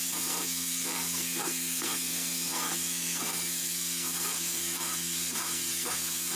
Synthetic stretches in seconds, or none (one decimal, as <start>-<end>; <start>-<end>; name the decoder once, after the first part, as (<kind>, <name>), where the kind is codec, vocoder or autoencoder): 0.0-6.4 (codec, SNAC)